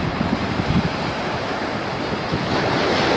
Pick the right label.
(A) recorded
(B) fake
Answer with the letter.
B